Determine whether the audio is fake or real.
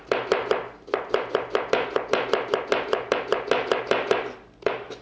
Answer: real